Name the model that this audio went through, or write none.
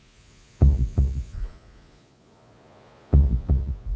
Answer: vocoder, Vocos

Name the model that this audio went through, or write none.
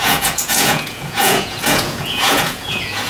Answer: vocoder, Vocos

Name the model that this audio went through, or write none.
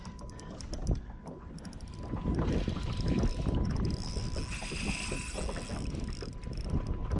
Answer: none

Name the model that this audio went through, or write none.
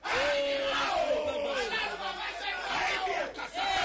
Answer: none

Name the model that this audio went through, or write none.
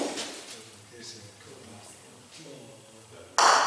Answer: none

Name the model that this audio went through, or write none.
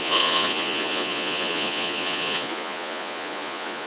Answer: vocoder, Vocos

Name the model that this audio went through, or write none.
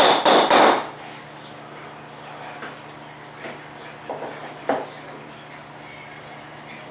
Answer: none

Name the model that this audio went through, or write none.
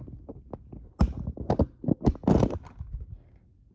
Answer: none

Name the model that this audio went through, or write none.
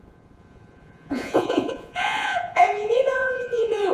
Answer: vocoder, Vocos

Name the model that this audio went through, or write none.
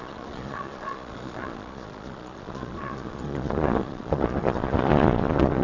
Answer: vocoder, Vocos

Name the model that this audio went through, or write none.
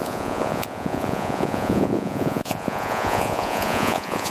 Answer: vocoder, Vocos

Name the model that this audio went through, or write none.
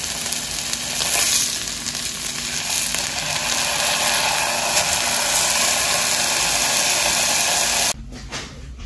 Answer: none